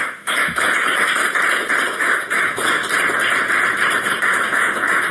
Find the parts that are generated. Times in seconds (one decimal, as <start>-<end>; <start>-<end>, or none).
0.0-1.2; 1.9-2.8; 4.0-5.1